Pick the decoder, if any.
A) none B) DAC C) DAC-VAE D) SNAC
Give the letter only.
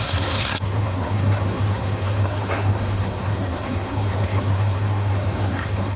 D